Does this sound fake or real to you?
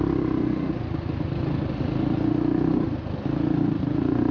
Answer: real